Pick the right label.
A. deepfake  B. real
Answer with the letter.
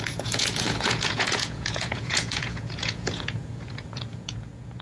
A